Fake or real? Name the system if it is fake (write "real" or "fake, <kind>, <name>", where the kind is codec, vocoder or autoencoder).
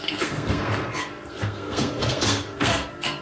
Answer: fake, codec, SNAC